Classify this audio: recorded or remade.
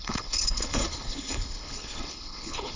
remade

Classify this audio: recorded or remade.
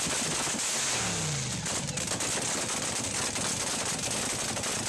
recorded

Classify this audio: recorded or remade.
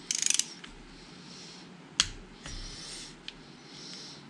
recorded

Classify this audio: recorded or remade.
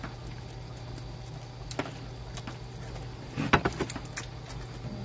recorded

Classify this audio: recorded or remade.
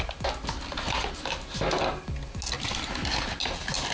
recorded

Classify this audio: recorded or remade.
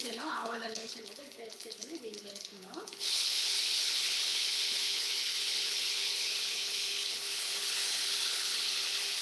remade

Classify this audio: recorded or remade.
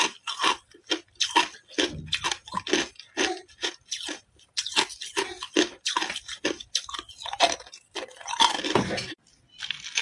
recorded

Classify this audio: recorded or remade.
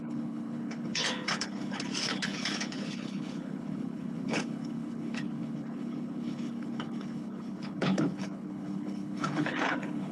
remade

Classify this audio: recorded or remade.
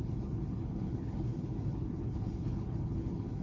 remade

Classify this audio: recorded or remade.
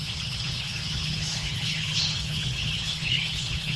remade